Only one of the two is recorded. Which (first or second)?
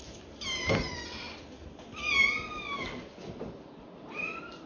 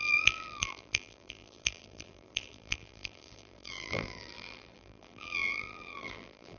first